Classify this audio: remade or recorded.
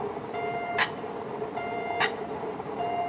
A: recorded